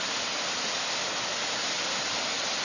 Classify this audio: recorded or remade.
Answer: recorded